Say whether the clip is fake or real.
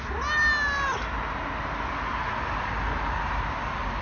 real